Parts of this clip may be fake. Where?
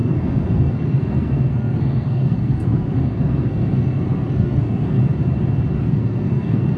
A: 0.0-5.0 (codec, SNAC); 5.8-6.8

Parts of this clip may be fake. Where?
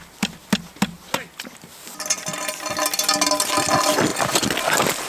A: none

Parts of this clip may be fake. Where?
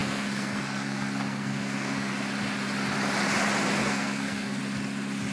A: 0.0-2.1 (codec, SNAC); 3.8-4.6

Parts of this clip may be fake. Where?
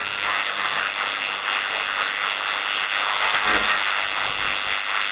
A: 0.0-0.8 (codec, SNAC); 3.1-3.9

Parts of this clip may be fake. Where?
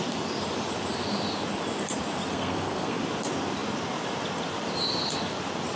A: 2.3-3.0 (codec, SNAC)